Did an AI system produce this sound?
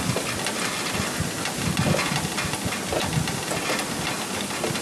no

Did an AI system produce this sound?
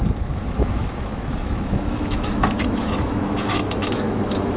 yes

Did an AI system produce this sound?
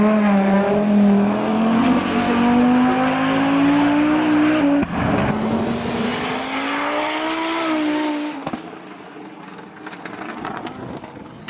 no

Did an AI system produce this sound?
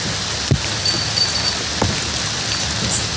no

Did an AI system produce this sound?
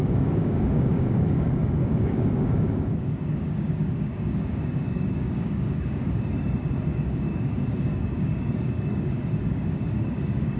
yes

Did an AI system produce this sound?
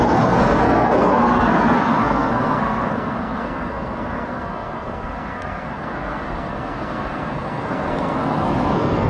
yes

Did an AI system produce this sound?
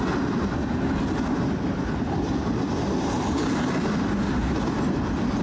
no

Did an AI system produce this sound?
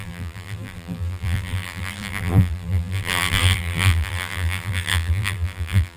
yes